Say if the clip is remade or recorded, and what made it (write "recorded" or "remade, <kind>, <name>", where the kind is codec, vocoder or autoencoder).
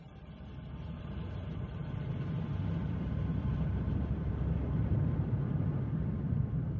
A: remade, vocoder, BigVGAN v2